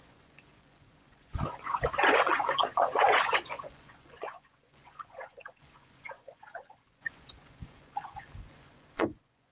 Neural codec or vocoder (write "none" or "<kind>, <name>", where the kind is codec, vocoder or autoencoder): vocoder, Vocos